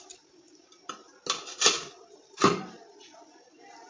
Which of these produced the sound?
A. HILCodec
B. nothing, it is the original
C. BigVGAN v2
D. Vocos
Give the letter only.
B